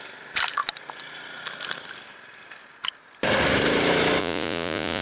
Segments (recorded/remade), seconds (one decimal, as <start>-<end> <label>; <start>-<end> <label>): 0.0-4.2 recorded; 4.2-5.0 remade